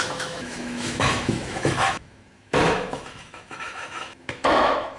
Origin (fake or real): fake